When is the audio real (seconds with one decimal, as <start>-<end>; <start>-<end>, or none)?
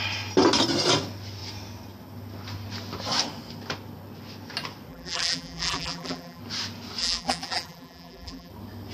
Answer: 0.0-4.9; 6.4-7.0; 8.5-8.9